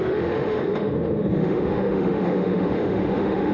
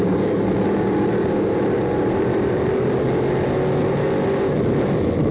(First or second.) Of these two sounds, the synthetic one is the first